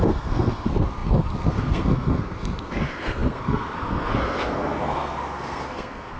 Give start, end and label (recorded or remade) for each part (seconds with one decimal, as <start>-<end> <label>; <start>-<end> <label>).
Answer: 0.0-6.2 remade